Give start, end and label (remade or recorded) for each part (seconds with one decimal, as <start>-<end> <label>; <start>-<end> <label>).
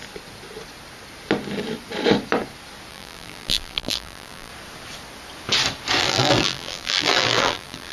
0.0-2.9 recorded; 2.9-4.5 remade; 4.5-6.0 recorded; 6.0-7.9 remade